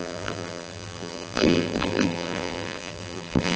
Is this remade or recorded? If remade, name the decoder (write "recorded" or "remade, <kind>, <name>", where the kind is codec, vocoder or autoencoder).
remade, vocoder, BigVGAN v2